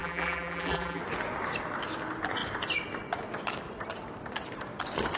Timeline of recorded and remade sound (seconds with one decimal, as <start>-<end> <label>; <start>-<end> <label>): 0.0-1.0 remade; 1.0-5.2 recorded